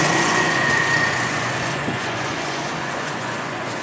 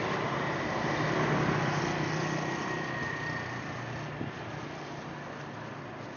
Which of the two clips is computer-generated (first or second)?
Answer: first